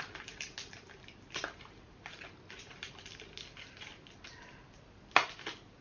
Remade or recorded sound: recorded